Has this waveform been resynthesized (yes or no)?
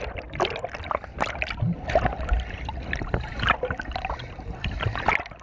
no